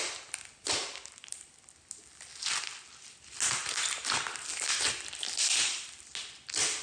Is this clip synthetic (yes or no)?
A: no